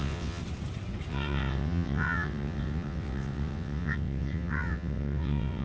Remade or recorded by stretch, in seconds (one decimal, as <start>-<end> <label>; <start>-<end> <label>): 0.0-0.4 remade; 0.4-1.1 recorded; 1.1-5.6 remade

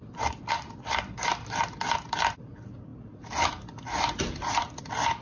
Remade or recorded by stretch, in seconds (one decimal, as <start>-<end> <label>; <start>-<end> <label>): 0.0-5.2 recorded

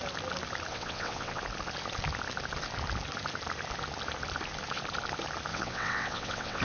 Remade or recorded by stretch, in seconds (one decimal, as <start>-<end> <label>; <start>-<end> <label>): 0.0-0.7 recorded; 0.7-1.4 remade; 1.4-5.5 recorded; 5.5-6.6 remade